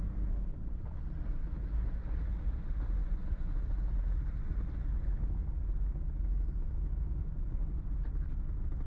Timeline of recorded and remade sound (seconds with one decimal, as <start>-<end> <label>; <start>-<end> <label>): 0.0-3.0 recorded; 3.0-3.6 remade; 3.6-8.9 recorded